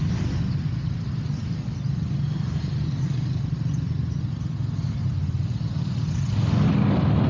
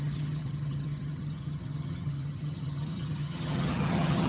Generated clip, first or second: second